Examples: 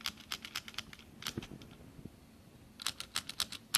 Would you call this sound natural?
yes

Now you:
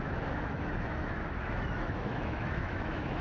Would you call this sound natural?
no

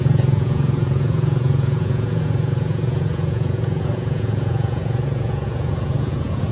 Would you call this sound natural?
no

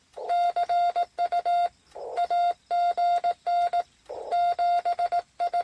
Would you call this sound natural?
yes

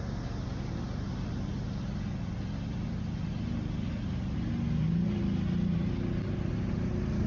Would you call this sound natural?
yes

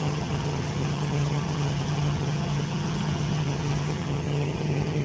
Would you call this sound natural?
no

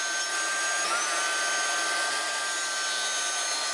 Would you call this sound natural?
yes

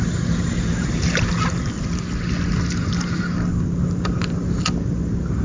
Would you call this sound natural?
yes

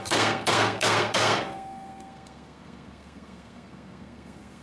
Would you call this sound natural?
no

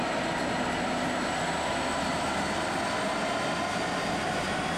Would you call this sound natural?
yes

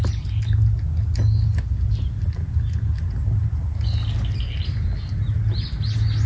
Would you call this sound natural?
yes